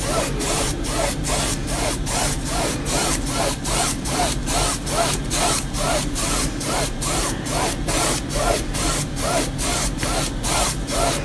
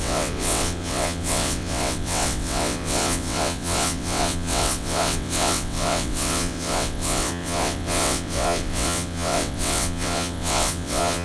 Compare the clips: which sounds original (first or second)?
first